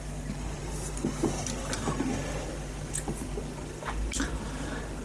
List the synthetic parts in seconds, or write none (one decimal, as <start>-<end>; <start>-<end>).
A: none